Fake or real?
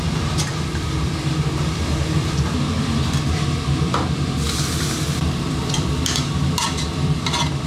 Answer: fake